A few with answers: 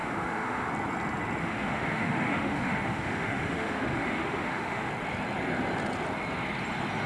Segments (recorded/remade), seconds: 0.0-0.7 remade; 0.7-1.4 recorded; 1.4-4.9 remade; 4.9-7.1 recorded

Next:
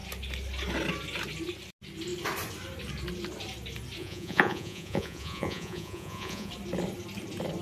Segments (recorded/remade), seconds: 0.0-4.0 recorded; 4.0-6.5 remade; 6.5-7.6 recorded

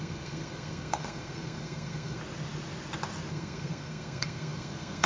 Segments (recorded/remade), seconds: 0.0-2.2 remade; 2.2-3.3 recorded; 3.3-5.1 remade

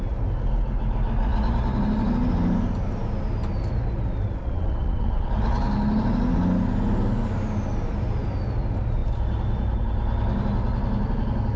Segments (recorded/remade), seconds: 0.0-4.4 recorded; 4.4-5.3 remade; 5.3-11.6 recorded

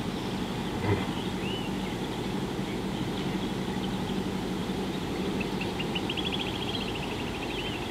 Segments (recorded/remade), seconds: 0.0-4.6 recorded; 4.6-6.7 remade; 6.7-7.9 recorded